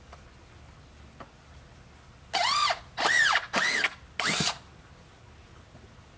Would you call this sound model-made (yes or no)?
no